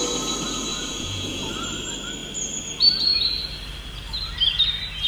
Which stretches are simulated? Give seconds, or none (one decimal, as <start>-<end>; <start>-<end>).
0.7-1.5